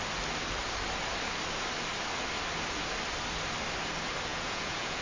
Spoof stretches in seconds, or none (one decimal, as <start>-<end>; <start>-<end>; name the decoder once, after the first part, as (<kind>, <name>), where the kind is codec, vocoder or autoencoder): 4.3-5.0 (vocoder, Vocos)